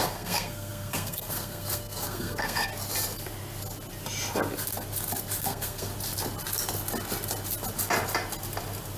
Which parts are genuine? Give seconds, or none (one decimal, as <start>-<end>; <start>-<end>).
2.7-5.4; 5.9-9.0